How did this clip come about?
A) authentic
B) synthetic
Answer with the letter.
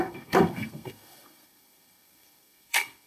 B